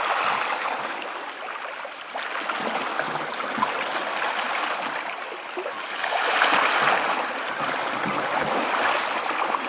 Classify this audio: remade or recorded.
recorded